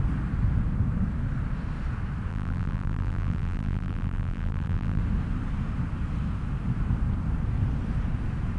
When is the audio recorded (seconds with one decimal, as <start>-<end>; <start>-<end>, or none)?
0.0-2.3; 5.0-8.6